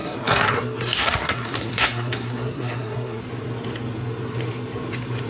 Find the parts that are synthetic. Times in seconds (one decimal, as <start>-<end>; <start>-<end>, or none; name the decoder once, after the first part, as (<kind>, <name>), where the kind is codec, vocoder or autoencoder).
0.0-3.2 (codec, SNAC)